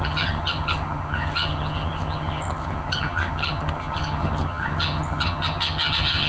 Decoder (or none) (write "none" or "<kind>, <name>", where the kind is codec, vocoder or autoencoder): vocoder, HiFi-GAN